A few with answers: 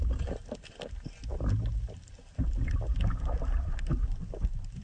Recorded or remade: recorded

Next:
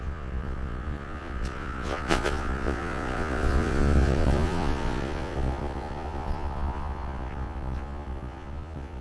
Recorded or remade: remade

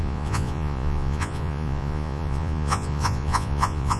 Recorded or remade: remade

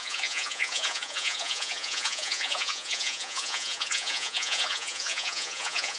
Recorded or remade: remade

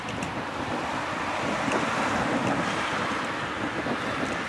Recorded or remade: recorded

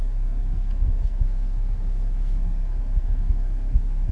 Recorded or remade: remade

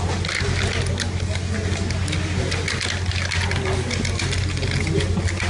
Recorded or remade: recorded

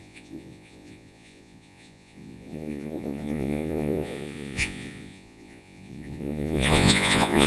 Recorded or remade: remade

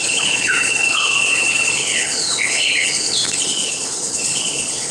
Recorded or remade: remade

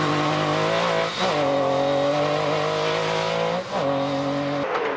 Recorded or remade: recorded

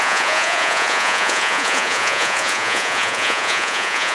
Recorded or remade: remade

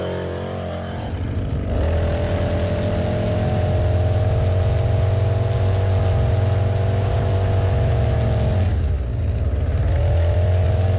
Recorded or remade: recorded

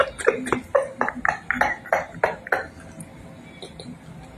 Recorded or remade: recorded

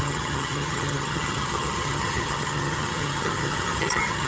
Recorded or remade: remade